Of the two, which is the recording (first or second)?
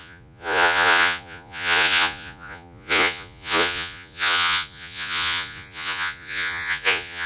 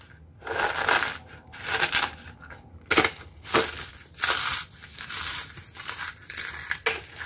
second